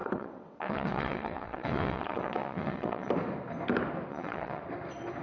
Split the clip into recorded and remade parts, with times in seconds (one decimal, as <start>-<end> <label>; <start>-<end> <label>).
0.0-3.1 remade; 3.1-4.1 recorded; 4.1-4.6 remade; 4.6-5.2 recorded